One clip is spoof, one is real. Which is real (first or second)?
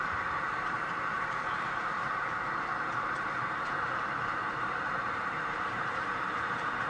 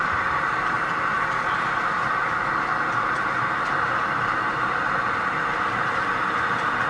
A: second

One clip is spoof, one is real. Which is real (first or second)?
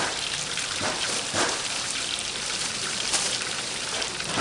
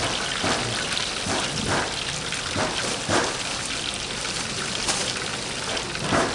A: second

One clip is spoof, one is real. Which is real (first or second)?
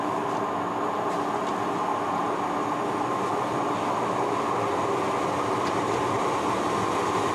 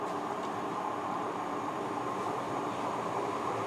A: first